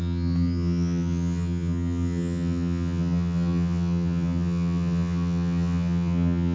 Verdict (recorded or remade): remade